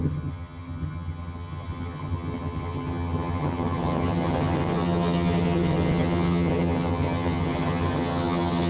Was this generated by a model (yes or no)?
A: yes